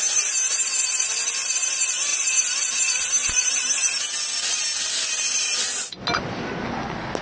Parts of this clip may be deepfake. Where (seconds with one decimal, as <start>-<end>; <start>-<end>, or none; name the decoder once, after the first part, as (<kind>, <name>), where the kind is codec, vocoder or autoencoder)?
none